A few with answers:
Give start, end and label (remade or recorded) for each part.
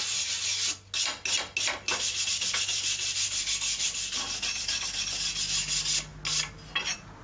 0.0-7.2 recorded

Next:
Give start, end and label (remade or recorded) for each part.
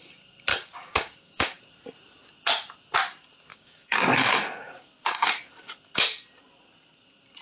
0.0-0.5 recorded; 0.5-1.6 remade; 1.6-3.5 recorded; 3.5-5.5 remade; 5.5-7.4 recorded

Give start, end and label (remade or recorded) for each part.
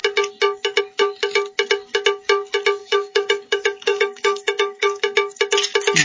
0.0-2.8 recorded; 2.8-5.0 remade; 5.0-6.0 recorded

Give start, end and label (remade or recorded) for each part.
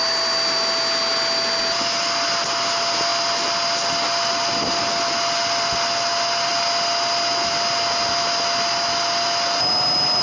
0.0-10.2 recorded